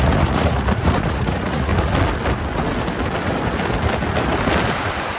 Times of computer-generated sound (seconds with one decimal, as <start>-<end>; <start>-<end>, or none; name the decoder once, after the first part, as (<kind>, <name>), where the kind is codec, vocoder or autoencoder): 0.0-1.7 (vocoder, Vocos); 4.8-5.2